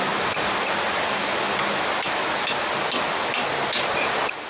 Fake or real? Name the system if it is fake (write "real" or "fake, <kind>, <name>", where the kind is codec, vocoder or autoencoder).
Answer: real